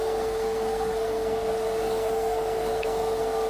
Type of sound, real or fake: fake